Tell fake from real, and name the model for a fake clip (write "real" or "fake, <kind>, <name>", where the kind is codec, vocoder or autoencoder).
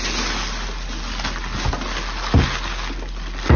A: real